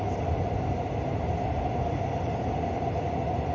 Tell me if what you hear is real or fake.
real